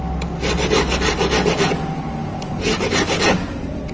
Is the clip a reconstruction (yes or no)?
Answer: no